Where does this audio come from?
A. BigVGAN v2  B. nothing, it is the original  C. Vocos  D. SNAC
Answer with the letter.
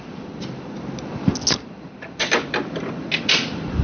B